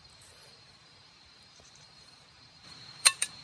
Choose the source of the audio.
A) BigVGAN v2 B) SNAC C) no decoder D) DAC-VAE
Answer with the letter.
A